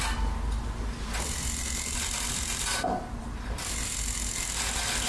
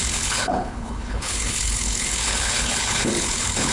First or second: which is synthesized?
second